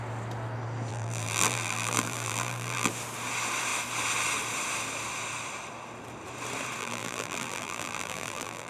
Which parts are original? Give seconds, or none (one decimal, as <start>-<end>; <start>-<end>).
0.0-0.9; 2.9-6.8